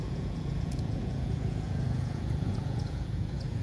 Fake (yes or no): yes